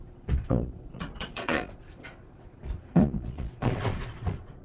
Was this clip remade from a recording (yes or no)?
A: yes